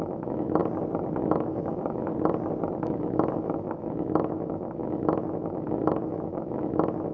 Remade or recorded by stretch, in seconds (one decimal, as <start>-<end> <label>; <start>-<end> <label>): 0.0-0.6 remade; 0.6-1.2 recorded; 1.2-2.1 remade; 2.1-2.8 recorded; 2.8-7.1 remade